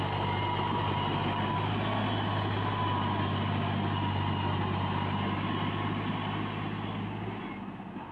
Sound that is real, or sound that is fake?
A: real